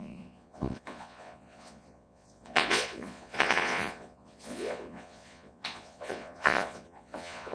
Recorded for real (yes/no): no